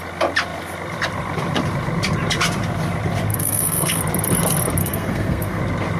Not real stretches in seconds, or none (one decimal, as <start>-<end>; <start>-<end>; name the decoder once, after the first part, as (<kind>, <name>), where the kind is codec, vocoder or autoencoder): 3.3-4.0 (codec, SNAC); 4.8-5.6